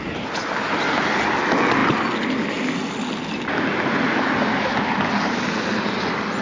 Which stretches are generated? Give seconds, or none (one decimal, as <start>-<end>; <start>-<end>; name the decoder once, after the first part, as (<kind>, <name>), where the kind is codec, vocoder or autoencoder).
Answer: none